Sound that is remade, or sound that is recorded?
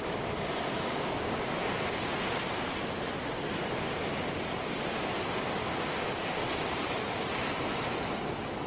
recorded